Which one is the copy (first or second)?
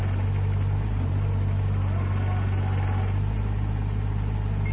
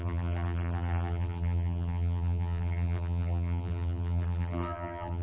second